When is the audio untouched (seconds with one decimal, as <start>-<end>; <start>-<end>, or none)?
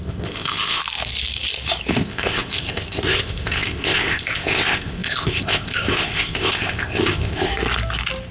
0.8-1.9; 7.5-8.3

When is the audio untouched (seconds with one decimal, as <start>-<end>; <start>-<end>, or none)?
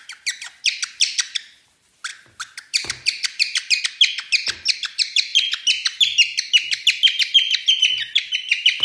0.0-8.8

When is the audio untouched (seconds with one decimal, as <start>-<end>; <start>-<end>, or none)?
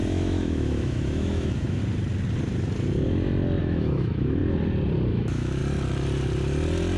1.8-3.6; 4.4-5.1; 5.6-7.0